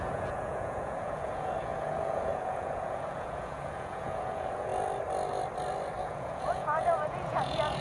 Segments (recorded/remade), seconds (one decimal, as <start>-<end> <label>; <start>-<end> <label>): 0.0-4.7 remade; 4.7-6.0 recorded; 6.0-7.8 remade